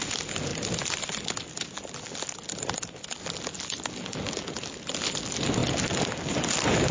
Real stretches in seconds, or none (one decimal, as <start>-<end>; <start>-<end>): 0.0-0.5; 3.9-6.9